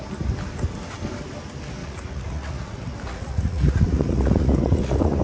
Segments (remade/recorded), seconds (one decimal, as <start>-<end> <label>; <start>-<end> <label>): 0.0-1.8 recorded; 1.8-5.2 remade